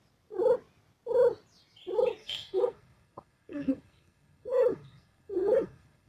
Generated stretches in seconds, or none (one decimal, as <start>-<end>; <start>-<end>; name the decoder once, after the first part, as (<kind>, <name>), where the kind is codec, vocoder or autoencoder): 2.2-6.1 (codec, SNAC)